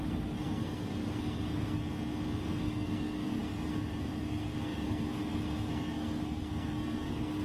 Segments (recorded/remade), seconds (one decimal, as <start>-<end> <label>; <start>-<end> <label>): 0.0-1.8 remade; 1.8-2.4 recorded; 2.4-7.4 remade